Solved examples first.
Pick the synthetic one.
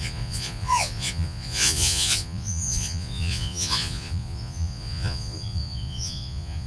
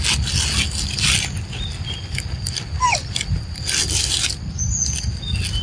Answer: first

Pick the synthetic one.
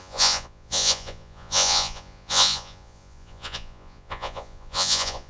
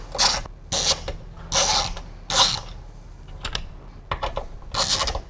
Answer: first